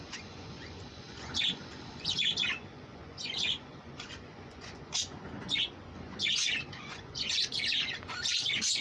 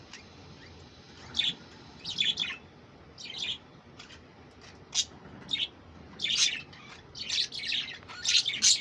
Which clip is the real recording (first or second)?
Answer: second